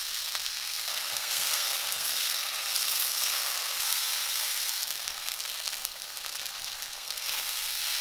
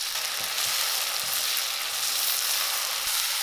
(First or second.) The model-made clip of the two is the first